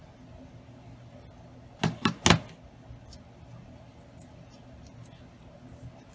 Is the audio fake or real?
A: real